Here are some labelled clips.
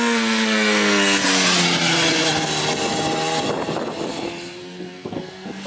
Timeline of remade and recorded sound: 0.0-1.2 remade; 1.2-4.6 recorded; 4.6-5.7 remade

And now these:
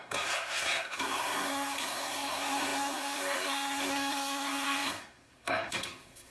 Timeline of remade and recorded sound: 0.0-6.3 remade

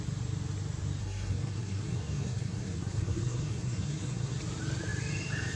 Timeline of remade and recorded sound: 0.0-1.0 recorded; 1.0-4.4 remade; 4.4-5.6 recorded

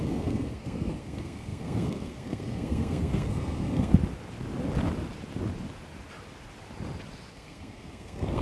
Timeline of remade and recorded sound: 0.0-3.9 remade; 3.9-7.3 recorded; 7.3-8.4 remade

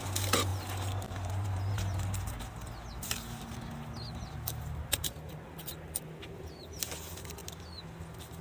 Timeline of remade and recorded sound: 0.0-8.4 recorded

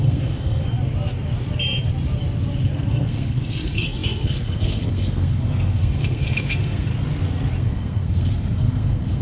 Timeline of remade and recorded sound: 0.0-0.6 remade; 0.6-2.9 recorded; 2.9-6.9 remade; 6.9-7.6 recorded; 7.6-9.2 remade

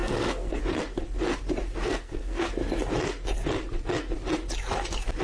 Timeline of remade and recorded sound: 0.0-0.6 remade; 0.6-1.8 recorded; 1.8-2.5 remade; 2.5-5.2 recorded